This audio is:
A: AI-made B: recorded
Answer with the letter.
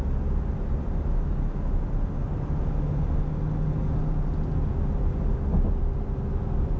B